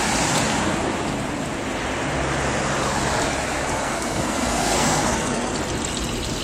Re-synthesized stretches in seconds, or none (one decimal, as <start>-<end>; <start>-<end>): 3.6-5.5